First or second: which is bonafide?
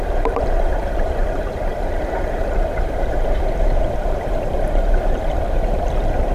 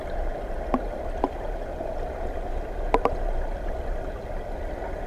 second